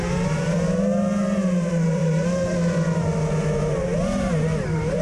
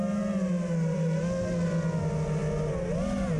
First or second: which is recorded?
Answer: second